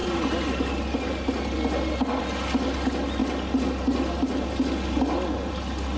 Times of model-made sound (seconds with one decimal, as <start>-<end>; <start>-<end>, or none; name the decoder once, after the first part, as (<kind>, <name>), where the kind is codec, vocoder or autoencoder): none